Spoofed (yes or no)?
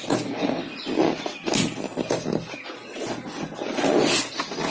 no